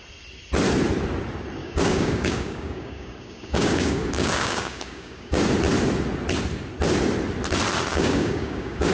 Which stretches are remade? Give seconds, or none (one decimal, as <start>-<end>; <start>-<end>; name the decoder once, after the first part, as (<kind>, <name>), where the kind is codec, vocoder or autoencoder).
1.6-5.4 (codec, DAC); 7.9-8.9